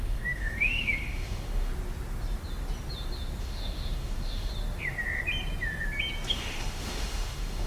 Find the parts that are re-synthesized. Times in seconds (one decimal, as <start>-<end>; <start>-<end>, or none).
0.0-1.7; 3.4-4.5; 6.3-7.7